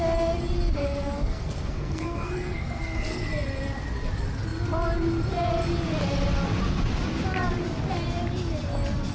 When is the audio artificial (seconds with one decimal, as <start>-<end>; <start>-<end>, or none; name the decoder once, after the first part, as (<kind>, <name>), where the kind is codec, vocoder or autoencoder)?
0.8-3.3 (codec, SNAC)